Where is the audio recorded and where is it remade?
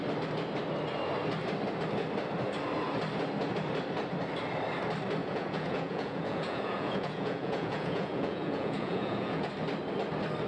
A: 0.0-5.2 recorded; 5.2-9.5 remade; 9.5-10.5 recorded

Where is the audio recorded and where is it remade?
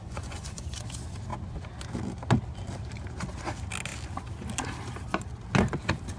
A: 0.0-0.8 remade; 0.8-6.2 recorded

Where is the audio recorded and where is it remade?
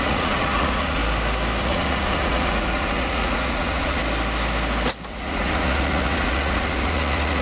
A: 0.0-1.0 remade; 1.0-1.6 recorded; 1.6-4.0 remade; 4.0-5.1 recorded; 5.1-7.4 remade